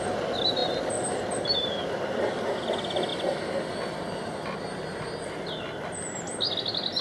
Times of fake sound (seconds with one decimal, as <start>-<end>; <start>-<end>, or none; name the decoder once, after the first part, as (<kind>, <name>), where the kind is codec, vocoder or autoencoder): 0.6-1.8 (vocoder, BigVGAN v2)